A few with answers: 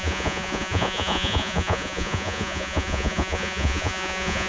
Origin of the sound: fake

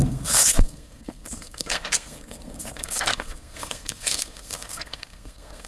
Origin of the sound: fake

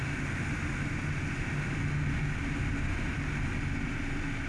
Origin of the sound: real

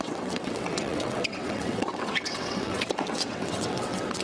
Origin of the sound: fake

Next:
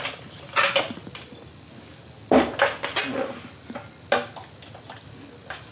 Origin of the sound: real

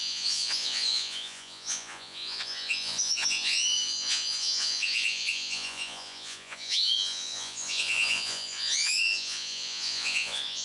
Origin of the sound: fake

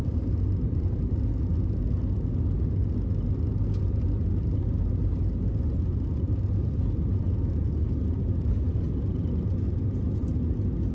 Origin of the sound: real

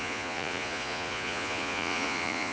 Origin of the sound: fake